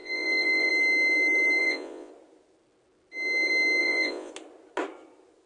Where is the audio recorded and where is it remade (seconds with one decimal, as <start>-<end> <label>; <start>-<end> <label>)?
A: 0.0-0.7 remade; 0.7-1.6 recorded; 1.6-2.1 remade; 2.1-3.8 recorded; 3.8-4.3 remade; 4.3-5.5 recorded